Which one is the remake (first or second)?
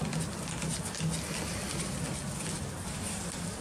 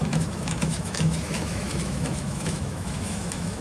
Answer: second